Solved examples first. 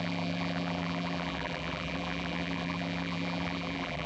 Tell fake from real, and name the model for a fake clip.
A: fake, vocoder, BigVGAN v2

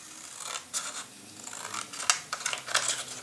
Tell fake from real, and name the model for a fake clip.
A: real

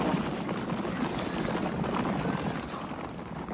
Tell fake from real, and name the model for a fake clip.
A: real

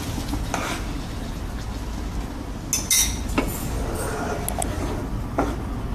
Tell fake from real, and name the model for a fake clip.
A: real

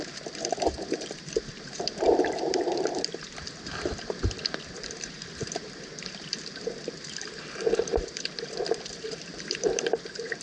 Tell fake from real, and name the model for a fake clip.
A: fake, vocoder, BigVGAN v2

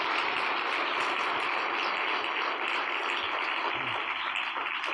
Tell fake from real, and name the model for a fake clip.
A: real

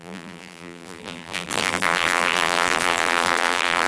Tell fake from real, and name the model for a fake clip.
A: fake, vocoder, BigVGAN v2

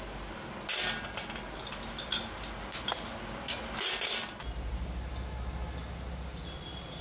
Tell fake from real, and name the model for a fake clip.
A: real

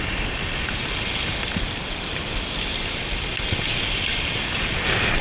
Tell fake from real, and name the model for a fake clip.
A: real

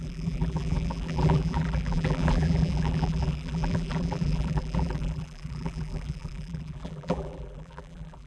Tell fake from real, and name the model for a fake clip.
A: fake, vocoder, BigVGAN v2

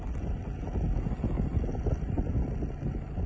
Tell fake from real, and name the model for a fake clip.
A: real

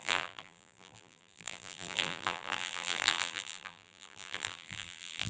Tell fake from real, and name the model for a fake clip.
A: fake, vocoder, BigVGAN v2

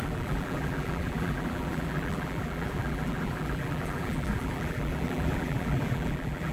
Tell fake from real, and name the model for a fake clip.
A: fake, vocoder, BigVGAN v2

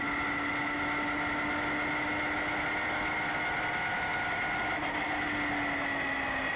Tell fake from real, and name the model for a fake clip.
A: real